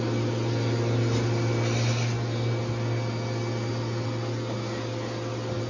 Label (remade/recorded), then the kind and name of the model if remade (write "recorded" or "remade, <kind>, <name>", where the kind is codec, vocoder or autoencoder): recorded